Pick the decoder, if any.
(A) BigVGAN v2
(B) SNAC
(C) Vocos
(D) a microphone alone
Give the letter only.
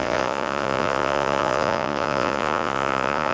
C